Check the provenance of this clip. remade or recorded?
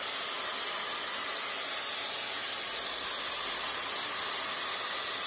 recorded